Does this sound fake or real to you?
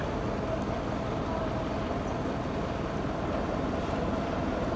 real